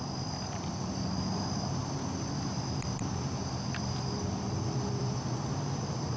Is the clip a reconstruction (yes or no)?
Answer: yes